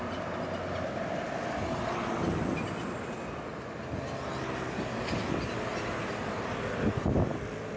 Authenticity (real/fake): real